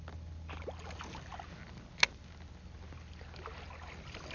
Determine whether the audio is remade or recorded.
recorded